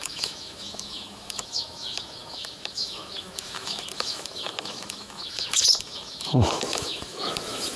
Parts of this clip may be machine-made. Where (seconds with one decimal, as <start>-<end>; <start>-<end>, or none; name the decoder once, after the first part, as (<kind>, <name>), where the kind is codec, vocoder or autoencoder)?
0.0-7.8 (autoencoder, DAC-VAE)